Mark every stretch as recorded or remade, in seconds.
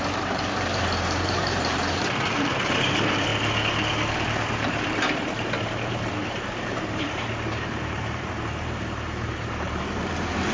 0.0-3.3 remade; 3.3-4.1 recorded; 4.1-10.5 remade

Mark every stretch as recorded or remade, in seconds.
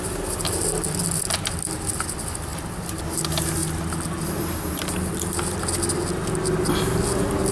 0.0-2.5 recorded; 2.5-3.0 remade; 3.0-7.5 recorded